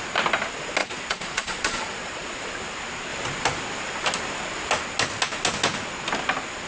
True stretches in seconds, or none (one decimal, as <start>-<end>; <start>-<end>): 0.0-0.8; 2.4-6.7